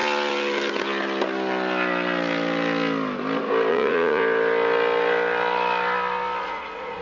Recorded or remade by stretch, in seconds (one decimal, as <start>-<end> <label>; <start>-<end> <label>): 0.0-3.7 recorded; 3.7-4.2 remade; 4.2-6.4 recorded; 6.4-7.0 remade